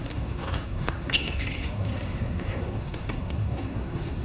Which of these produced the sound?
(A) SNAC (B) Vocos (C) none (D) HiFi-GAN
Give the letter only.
A